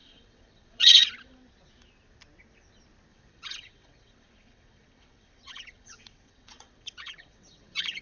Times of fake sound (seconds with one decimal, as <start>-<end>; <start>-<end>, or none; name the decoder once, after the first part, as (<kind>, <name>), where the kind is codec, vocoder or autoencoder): 0.0-1.1 (vocoder, WaveNeXt); 3.1-8.0